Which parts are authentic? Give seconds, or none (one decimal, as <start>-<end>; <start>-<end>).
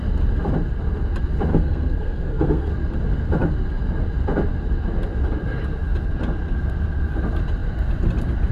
0.0-1.5; 2.7-8.5